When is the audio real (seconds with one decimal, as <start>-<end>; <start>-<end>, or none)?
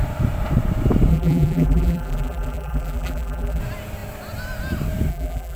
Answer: 0.0-1.1; 3.6-5.1